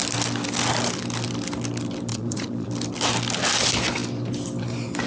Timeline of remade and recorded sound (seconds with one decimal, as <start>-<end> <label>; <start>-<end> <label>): 0.0-2.1 recorded; 2.1-2.7 remade; 2.7-5.1 recorded